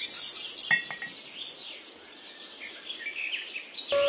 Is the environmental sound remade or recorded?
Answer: recorded